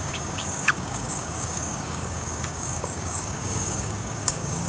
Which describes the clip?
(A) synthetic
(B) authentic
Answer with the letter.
A